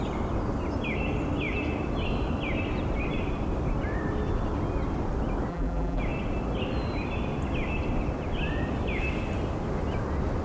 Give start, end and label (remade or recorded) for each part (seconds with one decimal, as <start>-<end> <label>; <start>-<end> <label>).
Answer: 0.0-5.5 recorded; 5.5-6.0 remade; 6.0-10.4 recorded